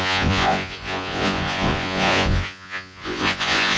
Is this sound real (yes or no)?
no